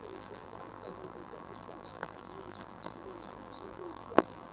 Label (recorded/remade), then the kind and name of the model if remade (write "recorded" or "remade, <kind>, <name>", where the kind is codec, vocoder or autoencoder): remade, vocoder, BigVGAN v2